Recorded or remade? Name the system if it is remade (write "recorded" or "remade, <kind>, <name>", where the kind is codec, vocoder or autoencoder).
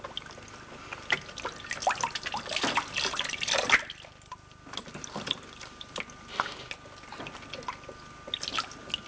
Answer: recorded